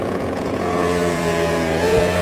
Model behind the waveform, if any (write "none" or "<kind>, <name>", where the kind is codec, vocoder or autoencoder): vocoder, Vocos